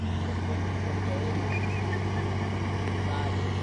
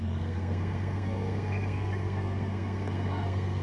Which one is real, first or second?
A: first